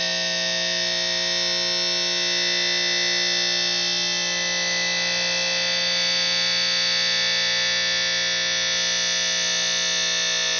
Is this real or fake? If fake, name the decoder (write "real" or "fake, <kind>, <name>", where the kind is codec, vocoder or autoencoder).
real